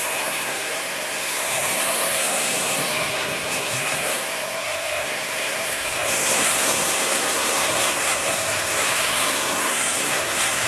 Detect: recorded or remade remade